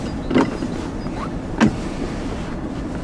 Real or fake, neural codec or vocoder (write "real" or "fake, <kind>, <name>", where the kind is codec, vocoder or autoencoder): real